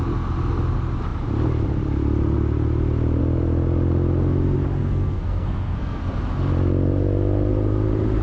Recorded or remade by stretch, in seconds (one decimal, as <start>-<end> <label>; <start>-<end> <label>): 0.0-4.8 recorded; 4.8-6.2 remade; 6.2-8.2 recorded